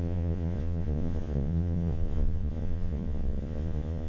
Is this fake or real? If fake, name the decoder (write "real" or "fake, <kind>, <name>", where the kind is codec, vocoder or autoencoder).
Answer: fake, vocoder, Vocos